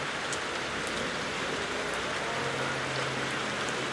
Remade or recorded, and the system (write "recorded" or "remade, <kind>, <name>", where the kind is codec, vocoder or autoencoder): recorded